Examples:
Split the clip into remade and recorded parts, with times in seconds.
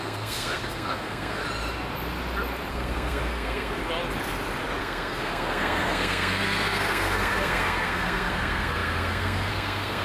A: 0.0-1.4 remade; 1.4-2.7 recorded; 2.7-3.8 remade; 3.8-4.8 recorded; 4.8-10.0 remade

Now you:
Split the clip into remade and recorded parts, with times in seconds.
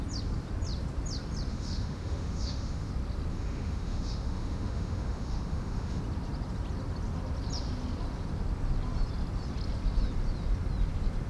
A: 0.0-1.5 recorded; 1.5-2.9 remade; 2.9-3.3 recorded; 3.3-6.0 remade; 6.0-11.3 recorded